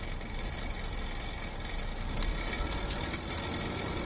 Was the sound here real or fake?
real